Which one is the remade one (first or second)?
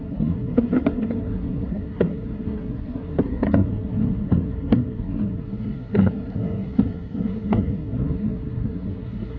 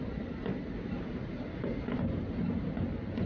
first